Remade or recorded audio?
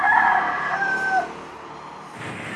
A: recorded